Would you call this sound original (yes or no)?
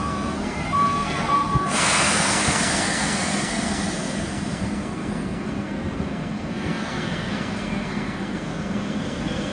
no